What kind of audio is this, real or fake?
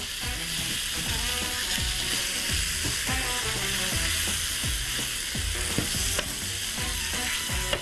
real